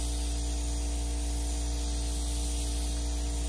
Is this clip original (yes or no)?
yes